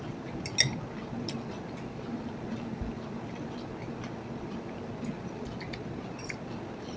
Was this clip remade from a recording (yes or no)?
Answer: no